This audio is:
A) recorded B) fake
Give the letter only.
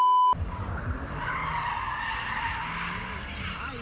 A